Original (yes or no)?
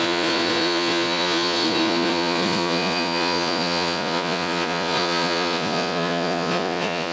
no